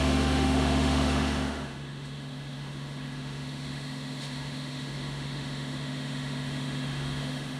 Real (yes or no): no